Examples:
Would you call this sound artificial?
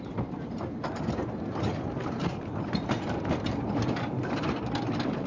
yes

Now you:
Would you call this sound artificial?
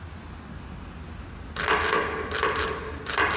no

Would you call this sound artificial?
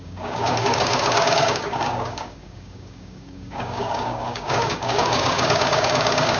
yes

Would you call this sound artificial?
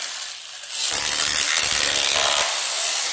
no